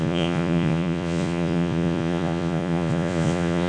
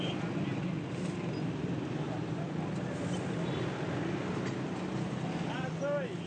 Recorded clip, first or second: second